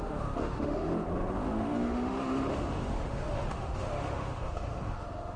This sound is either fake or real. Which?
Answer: fake